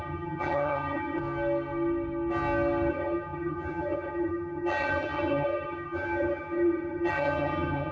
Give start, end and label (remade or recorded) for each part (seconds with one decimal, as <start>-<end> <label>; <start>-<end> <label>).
0.0-1.2 remade; 1.2-2.9 recorded; 2.9-7.9 remade